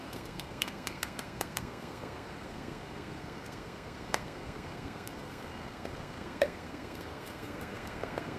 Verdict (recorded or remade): remade